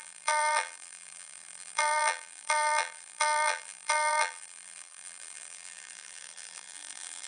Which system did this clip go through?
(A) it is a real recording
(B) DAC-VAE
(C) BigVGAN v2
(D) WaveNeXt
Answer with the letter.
C